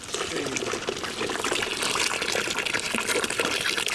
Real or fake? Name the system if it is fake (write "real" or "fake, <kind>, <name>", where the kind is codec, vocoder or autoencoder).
real